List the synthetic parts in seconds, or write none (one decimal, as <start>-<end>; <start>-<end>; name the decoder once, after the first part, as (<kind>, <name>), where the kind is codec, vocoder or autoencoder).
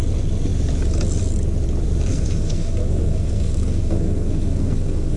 2.1-5.2 (codec, SNAC)